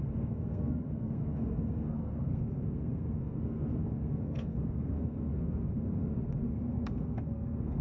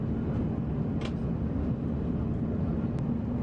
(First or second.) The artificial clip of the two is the first